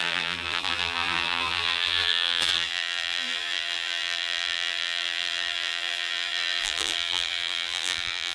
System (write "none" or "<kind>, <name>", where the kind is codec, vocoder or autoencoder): vocoder, BigVGAN v2